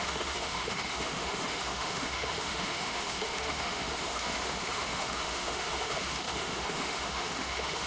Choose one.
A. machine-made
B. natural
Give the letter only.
A